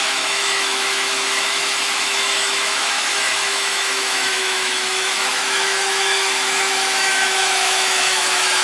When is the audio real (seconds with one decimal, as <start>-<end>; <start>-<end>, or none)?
none